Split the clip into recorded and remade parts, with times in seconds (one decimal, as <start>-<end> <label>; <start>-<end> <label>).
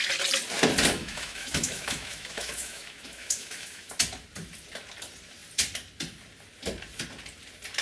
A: 0.0-1.0 recorded; 1.0-3.9 remade; 3.9-7.8 recorded